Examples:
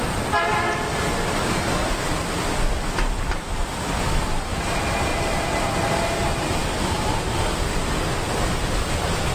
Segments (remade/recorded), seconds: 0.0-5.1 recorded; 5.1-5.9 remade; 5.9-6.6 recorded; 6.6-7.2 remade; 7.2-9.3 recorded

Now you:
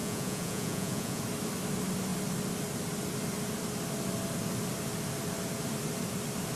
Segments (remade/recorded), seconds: 0.0-1.2 remade; 1.2-6.6 recorded